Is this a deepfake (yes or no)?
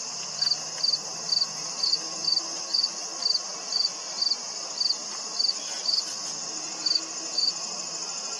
no